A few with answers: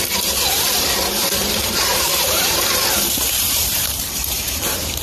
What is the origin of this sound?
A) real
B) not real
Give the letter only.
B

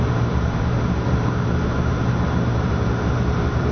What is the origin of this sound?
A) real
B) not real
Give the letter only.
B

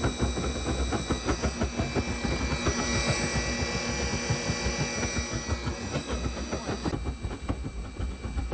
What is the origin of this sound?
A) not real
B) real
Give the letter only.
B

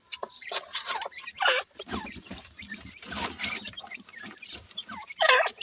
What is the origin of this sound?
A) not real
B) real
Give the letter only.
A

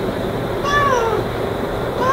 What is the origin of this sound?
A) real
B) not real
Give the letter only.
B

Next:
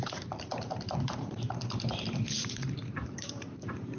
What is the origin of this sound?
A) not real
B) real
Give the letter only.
A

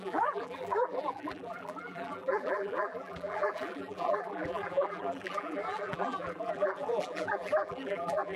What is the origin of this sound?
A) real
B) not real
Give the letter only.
B